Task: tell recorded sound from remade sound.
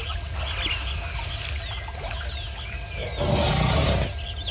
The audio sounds recorded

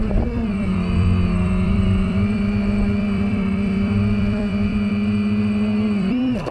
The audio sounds remade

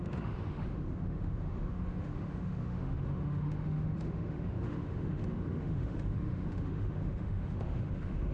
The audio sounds remade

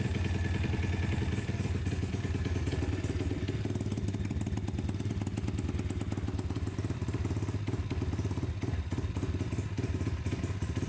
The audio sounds recorded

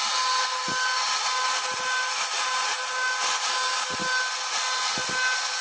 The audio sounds recorded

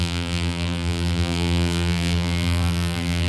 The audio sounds remade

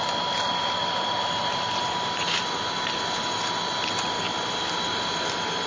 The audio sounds remade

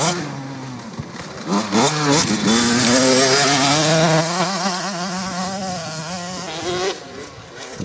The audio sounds recorded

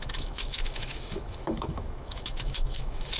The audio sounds remade